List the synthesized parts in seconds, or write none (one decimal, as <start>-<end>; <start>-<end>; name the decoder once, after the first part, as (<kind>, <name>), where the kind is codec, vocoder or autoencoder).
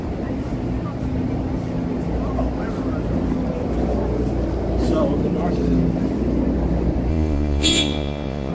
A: 7.1-8.5 (vocoder, Vocos)